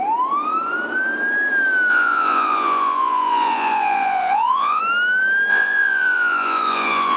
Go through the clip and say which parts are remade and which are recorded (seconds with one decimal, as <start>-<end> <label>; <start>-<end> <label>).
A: 0.0-1.9 recorded; 1.9-4.8 remade; 4.8-5.5 recorded; 5.5-7.2 remade